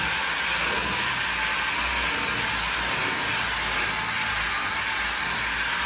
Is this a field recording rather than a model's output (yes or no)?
yes